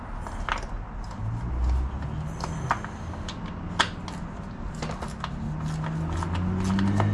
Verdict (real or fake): real